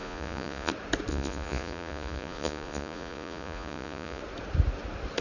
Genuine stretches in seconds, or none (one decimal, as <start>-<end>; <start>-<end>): 0.7-1.1; 4.2-5.2